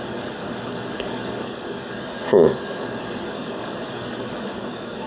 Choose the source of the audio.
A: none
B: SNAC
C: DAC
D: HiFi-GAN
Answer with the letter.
C